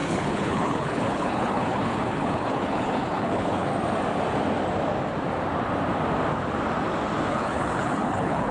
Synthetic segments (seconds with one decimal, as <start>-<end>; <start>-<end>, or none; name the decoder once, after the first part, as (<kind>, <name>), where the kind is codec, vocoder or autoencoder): 0.0-3.7 (codec, HILCodec); 7.3-8.5